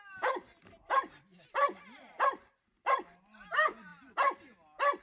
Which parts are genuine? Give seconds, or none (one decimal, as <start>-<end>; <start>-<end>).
0.0-1.3; 1.8-5.0